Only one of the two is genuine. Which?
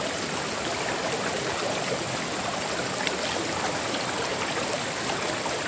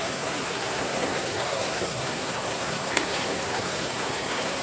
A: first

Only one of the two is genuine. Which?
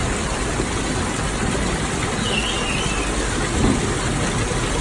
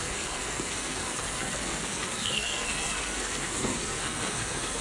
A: first